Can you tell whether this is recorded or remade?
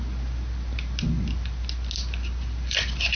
recorded